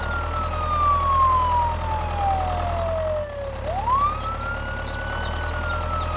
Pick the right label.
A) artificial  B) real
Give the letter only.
B